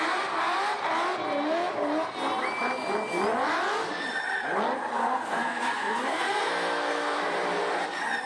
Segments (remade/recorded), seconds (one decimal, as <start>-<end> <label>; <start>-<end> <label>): 0.0-4.9 recorded; 4.9-7.2 remade; 7.2-8.3 recorded